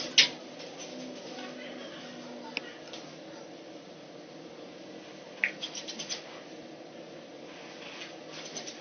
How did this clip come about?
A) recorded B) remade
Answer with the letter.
A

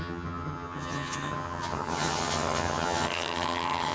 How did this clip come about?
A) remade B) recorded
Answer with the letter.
A